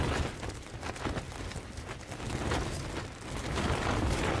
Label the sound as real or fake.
real